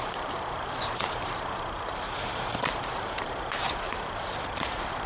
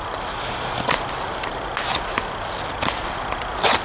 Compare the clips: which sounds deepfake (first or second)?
first